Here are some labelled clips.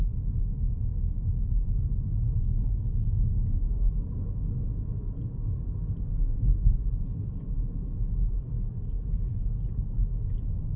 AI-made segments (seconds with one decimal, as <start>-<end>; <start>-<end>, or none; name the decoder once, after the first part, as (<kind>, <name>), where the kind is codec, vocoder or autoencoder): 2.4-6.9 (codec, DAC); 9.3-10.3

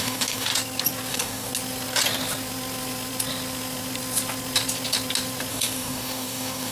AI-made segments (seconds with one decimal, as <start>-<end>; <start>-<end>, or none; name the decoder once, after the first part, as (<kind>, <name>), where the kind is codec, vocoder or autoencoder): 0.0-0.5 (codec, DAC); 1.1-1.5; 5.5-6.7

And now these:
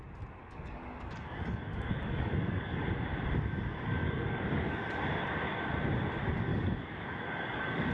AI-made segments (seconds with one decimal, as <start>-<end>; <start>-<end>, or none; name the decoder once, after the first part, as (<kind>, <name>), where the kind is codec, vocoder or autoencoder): 0.4-2.8 (codec, DAC); 4.0-4.8; 6.5-7.9

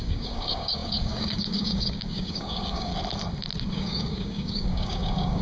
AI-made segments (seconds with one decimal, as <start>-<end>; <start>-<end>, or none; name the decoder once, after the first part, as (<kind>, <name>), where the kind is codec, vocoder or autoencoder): 0.0-2.9 (codec, DAC); 3.7-5.4

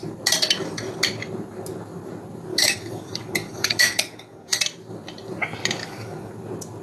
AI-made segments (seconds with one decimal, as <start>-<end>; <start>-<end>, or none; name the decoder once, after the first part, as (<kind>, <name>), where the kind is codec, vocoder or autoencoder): 2.5-4.6 (codec, DAC); 5.8-6.3